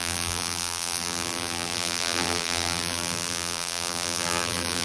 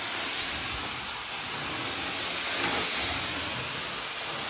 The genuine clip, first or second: second